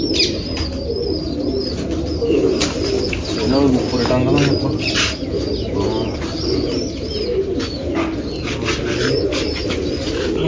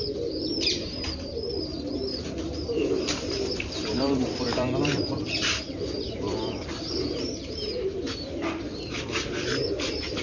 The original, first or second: first